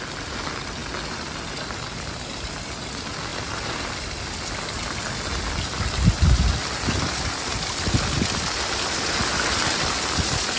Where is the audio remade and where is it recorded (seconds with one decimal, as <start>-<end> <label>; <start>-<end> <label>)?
0.0-10.6 recorded